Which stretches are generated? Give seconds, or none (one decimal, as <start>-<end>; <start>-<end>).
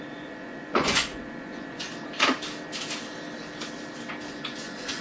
0.0-1.9; 4.3-5.0